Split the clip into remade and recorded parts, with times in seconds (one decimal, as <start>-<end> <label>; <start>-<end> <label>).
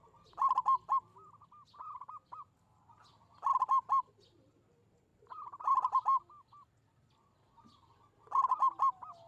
0.0-9.3 recorded